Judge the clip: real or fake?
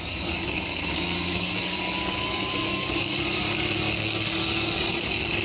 fake